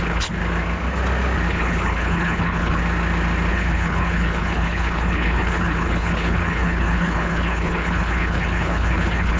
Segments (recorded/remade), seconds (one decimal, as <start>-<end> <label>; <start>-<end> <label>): 0.0-0.4 remade; 0.4-1.5 recorded; 1.5-2.8 remade; 2.8-3.5 recorded; 3.5-9.4 remade